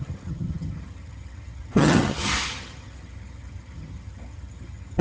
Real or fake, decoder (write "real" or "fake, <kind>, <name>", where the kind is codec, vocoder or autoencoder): fake, vocoder, HiFi-GAN